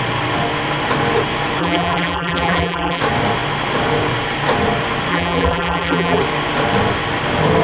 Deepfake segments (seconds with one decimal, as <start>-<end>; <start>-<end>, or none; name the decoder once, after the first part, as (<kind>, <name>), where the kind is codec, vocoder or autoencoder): 1.6-3.0 (vocoder, BigVGAN v2); 5.1-6.2